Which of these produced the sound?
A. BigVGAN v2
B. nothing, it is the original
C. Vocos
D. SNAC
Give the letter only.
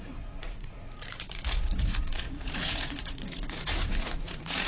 C